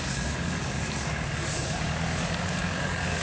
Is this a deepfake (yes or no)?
yes